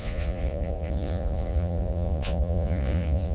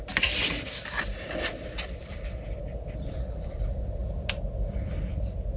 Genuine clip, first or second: second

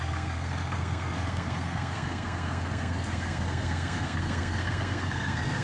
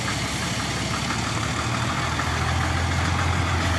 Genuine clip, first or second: second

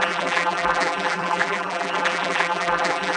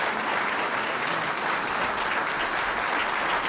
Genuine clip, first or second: second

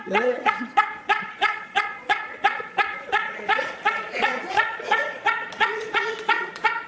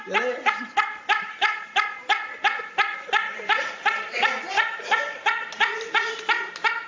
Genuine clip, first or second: second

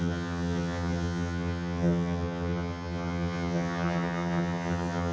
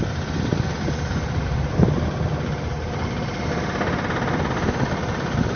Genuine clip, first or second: second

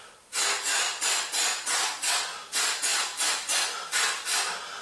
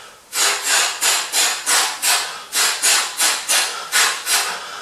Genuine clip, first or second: second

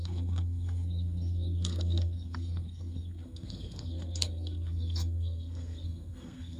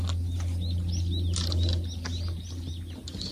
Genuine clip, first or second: second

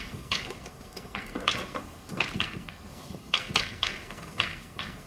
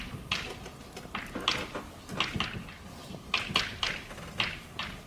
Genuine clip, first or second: second